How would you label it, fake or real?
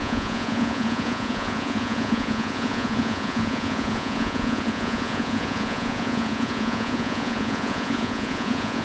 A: fake